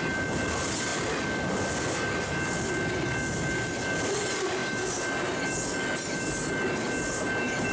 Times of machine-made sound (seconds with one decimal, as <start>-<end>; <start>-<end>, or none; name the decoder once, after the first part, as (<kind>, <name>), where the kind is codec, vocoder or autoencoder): none